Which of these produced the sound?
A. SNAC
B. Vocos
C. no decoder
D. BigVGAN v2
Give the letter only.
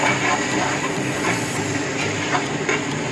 C